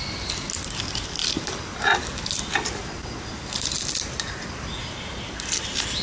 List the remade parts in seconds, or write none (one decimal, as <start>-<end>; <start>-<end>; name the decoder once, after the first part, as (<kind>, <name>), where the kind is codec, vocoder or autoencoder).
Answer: none